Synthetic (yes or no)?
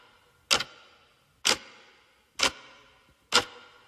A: no